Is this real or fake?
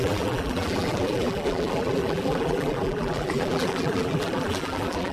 fake